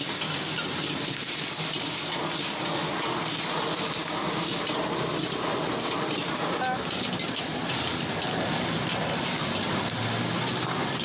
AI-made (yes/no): no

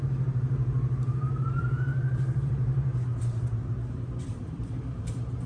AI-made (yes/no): yes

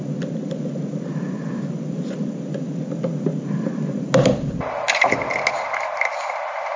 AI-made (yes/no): no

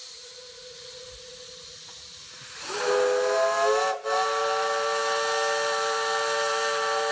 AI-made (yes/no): no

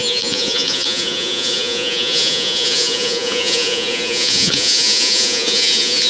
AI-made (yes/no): yes